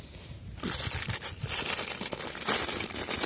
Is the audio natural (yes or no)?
yes